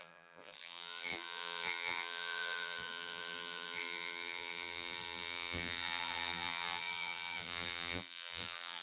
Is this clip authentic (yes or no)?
no